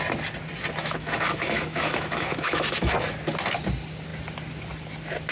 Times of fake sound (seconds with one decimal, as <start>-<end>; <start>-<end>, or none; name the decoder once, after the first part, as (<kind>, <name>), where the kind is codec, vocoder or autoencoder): 0.8-2.9 (autoencoder, DAC-VAE)